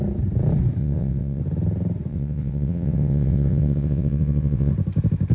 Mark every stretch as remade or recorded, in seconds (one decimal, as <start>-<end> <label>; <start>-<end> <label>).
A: 0.0-0.8 recorded; 0.8-1.4 remade; 1.4-2.1 recorded; 2.1-4.7 remade; 4.7-5.3 recorded